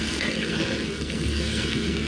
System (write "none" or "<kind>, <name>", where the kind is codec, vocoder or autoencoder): codec, SNAC